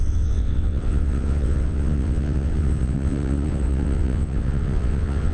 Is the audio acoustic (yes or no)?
no